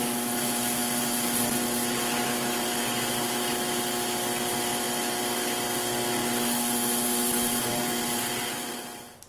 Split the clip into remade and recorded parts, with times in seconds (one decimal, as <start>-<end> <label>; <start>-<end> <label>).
0.0-4.7 recorded; 4.7-5.2 remade; 5.2-9.3 recorded